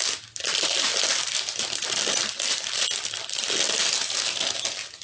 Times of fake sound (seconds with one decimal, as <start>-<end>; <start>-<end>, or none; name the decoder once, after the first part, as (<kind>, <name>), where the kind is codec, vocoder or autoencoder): none